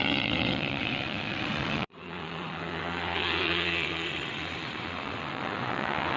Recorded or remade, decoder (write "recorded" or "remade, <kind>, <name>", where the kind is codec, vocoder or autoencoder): remade, vocoder, WaveNeXt